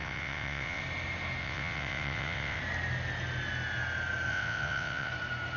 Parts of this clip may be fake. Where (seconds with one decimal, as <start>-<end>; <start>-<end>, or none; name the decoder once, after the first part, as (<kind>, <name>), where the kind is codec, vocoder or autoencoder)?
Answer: 0.0-0.8 (vocoder, WaveNeXt); 1.4-2.6; 4.3-5.1